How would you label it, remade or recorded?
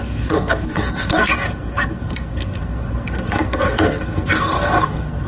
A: remade